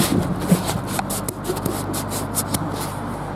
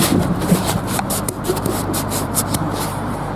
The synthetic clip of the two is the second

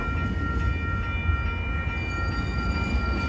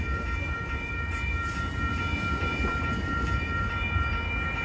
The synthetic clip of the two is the second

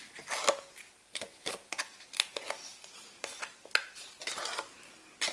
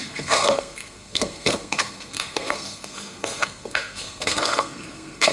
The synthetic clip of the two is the second